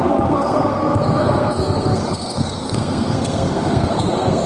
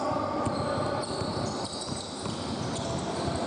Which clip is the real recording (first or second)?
second